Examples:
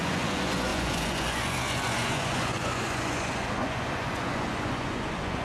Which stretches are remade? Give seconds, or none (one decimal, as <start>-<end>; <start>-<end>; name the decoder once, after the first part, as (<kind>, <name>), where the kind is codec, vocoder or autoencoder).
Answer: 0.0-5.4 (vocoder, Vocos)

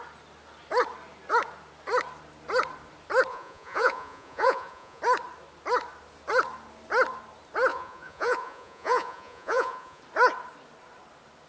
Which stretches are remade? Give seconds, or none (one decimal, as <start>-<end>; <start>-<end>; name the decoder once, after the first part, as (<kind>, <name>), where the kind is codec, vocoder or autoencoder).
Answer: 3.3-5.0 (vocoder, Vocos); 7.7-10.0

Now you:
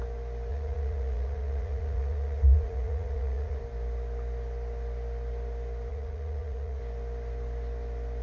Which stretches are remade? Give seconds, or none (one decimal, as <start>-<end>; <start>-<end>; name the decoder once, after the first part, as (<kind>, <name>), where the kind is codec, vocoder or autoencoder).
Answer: 0.5-3.6 (vocoder, Vocos); 5.9-6.8

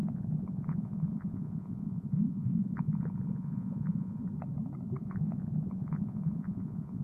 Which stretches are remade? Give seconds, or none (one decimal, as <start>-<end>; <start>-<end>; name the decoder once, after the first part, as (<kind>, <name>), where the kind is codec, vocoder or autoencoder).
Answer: 0.0-4.2 (vocoder, Vocos); 5.0-7.0

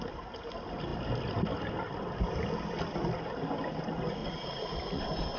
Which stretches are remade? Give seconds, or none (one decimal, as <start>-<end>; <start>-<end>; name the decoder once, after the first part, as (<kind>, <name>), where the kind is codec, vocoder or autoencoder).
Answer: 4.2-5.0 (vocoder, Vocos)

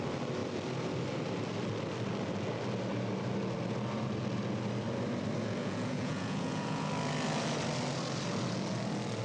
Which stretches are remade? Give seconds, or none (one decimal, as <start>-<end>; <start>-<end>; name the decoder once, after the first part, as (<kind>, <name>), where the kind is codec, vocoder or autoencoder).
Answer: 5.6-6.9 (vocoder, Vocos)

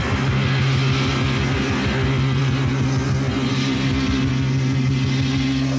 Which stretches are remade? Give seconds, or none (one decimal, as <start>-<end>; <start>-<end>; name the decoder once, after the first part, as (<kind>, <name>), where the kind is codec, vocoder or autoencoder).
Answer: none